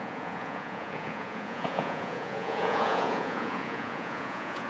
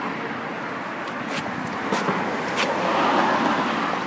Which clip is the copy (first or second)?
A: first